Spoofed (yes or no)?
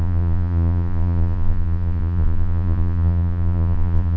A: yes